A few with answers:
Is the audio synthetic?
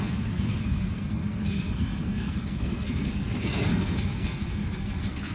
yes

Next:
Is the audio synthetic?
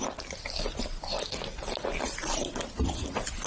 no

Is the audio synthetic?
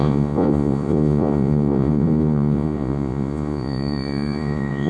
yes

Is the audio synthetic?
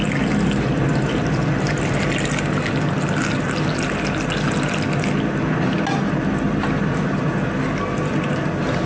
no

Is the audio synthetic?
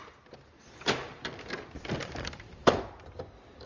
yes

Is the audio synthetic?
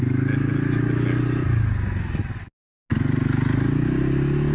no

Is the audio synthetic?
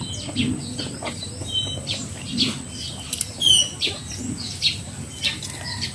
no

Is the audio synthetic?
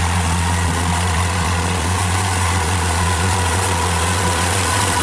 yes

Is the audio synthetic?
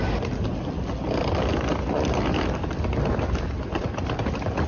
no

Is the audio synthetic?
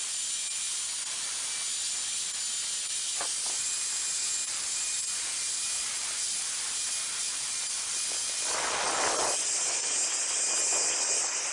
no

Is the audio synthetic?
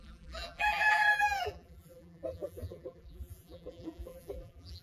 yes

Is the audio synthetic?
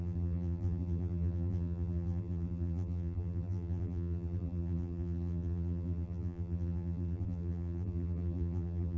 yes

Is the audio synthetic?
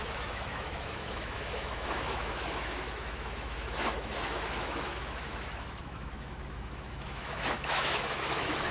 yes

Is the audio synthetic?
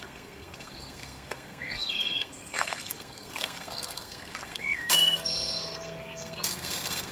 yes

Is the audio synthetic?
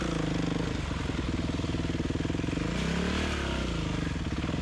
no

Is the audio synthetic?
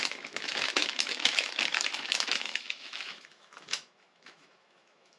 yes